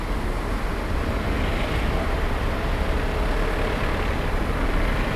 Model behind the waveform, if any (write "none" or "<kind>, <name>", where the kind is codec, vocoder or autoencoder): none